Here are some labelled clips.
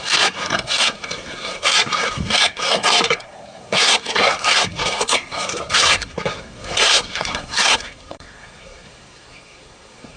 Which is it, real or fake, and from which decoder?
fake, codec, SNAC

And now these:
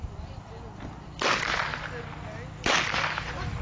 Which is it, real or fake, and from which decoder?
real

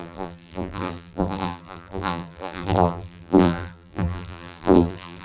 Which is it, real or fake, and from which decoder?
fake, vocoder, BigVGAN v2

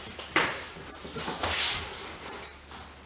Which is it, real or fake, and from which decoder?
real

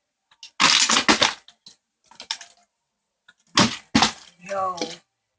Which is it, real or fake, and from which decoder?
real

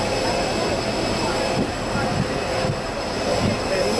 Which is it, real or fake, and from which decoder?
real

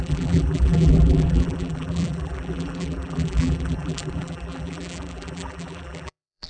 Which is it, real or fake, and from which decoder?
fake, vocoder, BigVGAN v2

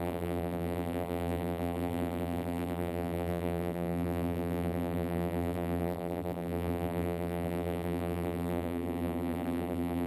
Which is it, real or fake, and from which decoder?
fake, vocoder, BigVGAN v2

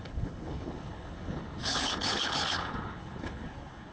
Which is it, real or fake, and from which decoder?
fake, codec, HILCodec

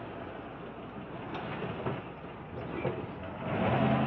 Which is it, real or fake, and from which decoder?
real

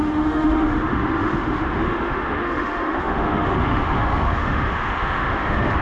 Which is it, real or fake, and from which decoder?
fake, autoencoder, DAC-VAE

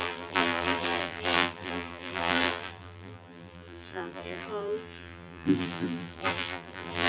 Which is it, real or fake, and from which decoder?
fake, vocoder, BigVGAN v2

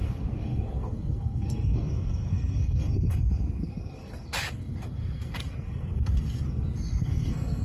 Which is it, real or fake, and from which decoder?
fake, codec, SNAC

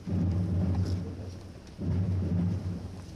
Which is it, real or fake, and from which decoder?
real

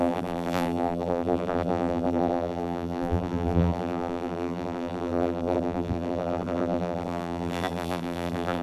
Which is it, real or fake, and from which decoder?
fake, vocoder, BigVGAN v2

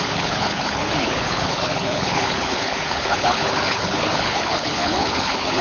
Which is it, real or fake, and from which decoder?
fake, codec, HILCodec